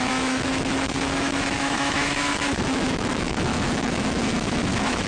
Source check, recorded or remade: remade